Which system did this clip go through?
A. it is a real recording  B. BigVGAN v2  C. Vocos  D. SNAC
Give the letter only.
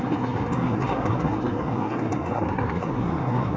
D